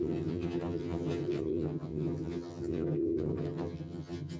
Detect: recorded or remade remade